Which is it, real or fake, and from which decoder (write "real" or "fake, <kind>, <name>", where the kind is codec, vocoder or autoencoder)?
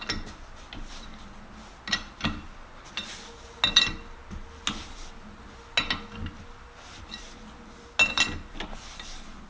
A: real